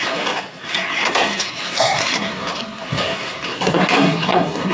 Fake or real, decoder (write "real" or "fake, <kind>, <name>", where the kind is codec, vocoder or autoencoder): fake, codec, SNAC